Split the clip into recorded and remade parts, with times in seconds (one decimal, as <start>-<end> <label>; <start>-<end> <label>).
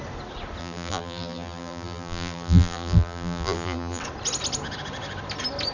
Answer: 0.0-0.6 recorded; 0.6-4.0 remade; 4.0-5.7 recorded